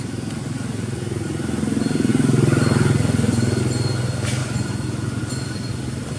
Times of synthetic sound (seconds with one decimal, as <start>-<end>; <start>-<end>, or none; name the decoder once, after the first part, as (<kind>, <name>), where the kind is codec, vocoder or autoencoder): 4.4-5.2 (vocoder, Vocos)